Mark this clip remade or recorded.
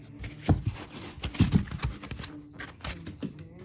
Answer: recorded